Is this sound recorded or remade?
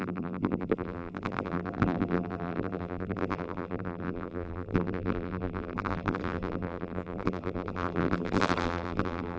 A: remade